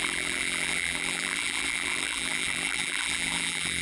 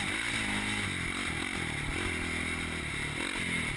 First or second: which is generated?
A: first